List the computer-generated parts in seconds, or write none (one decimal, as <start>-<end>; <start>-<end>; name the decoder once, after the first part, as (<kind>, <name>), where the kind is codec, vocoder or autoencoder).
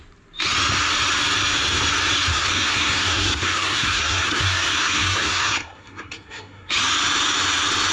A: 2.3-6.7 (codec, SNAC)